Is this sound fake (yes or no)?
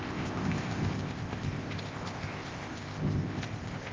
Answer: yes